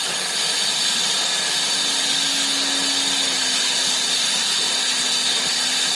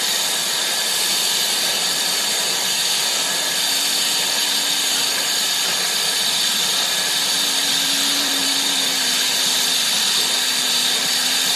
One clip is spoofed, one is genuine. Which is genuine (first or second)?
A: first